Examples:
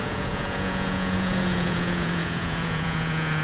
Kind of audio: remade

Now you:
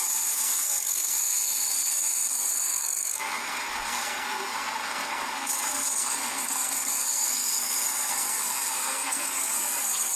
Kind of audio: remade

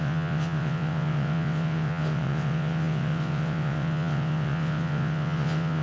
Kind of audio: remade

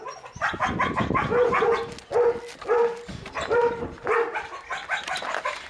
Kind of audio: recorded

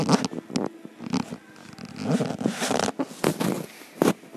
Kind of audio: recorded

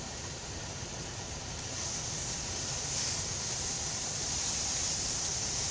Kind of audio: remade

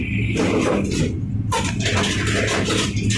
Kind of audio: recorded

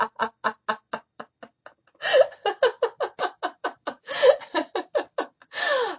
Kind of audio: recorded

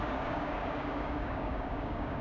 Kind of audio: remade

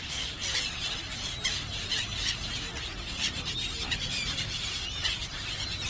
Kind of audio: recorded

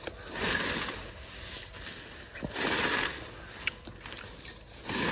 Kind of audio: recorded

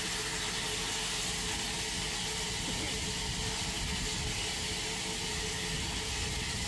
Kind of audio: recorded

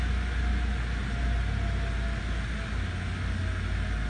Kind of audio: recorded